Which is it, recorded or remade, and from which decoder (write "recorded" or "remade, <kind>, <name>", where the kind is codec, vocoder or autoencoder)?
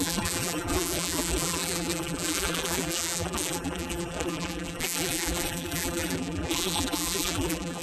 remade, vocoder, BigVGAN v2